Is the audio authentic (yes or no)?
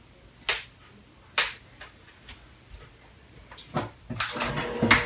yes